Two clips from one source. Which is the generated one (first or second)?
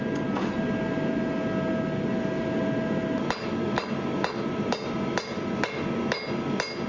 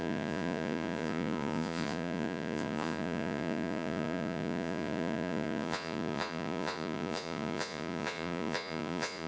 second